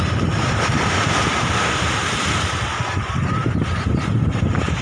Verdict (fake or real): fake